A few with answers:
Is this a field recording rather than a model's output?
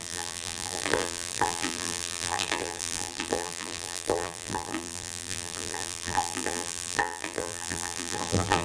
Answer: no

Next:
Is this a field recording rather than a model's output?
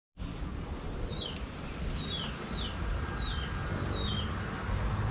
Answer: yes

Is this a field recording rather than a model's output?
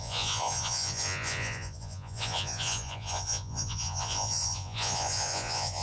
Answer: no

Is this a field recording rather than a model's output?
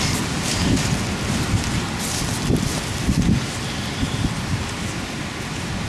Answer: yes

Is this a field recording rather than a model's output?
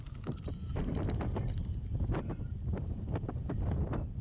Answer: yes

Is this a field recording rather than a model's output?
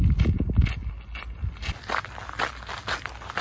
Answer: yes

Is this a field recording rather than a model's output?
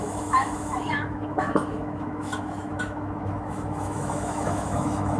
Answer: no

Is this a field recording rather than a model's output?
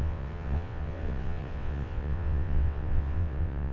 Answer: no